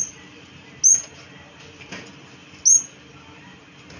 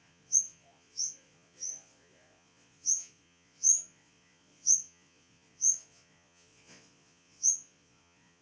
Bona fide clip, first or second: first